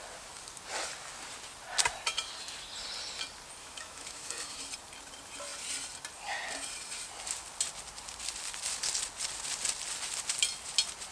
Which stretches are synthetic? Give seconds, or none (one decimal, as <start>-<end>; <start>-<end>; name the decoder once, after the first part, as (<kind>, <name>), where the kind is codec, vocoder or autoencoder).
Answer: 3.6-4.3 (autoencoder, DAC-VAE)